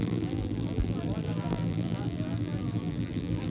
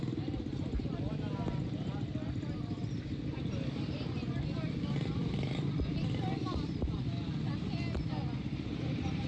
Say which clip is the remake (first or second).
first